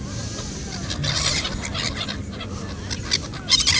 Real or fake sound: real